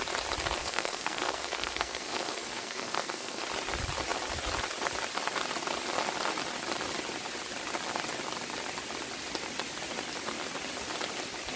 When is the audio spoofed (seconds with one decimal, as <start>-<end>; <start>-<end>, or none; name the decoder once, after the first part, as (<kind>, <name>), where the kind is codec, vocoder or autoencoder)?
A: 0.6-3.4 (codec, SNAC)